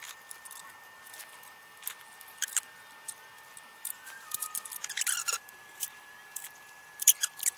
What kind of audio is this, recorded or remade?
remade